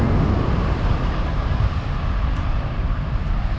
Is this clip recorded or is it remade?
recorded